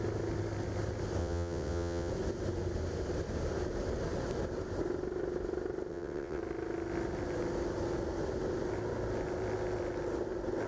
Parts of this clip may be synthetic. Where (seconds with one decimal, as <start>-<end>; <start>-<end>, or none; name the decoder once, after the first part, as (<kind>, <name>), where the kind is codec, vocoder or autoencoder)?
1.2-2.1 (vocoder, WaveNeXt); 5.9-6.4